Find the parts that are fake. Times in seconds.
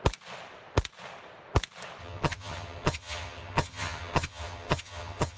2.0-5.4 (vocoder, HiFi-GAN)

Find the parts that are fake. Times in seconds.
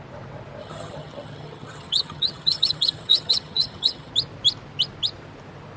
0.6-4.1 (vocoder, HiFi-GAN)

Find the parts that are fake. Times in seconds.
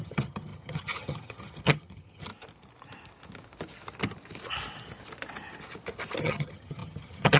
0.0-2.3 (vocoder, HiFi-GAN); 6.2-7.4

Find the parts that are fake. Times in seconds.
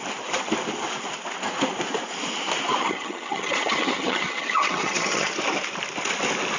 2.8-5.3 (vocoder, HiFi-GAN)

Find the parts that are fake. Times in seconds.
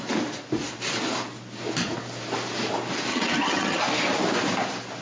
3.1-3.8 (vocoder, HiFi-GAN)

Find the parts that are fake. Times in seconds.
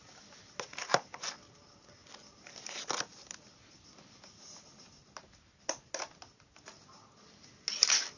none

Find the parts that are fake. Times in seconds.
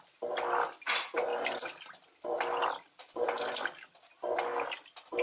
none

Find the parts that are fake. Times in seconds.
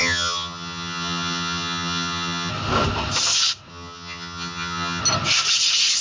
0.0-2.5 (vocoder, HiFi-GAN); 3.7-5.0